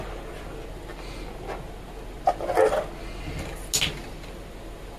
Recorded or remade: recorded